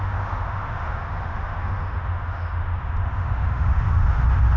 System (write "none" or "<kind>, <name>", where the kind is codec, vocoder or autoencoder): autoencoder, DAC-VAE